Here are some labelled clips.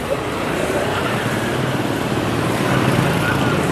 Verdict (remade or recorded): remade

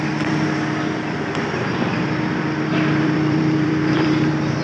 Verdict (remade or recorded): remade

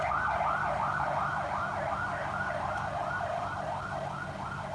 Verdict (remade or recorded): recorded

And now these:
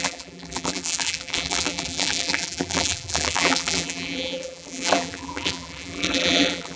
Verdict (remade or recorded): remade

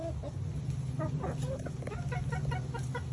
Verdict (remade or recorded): recorded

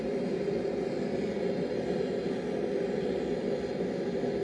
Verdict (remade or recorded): recorded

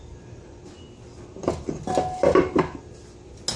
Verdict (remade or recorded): recorded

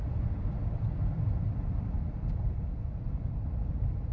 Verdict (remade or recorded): remade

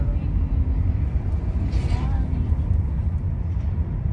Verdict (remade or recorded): remade